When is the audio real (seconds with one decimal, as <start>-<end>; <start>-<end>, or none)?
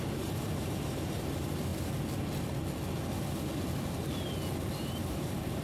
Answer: 1.7-5.1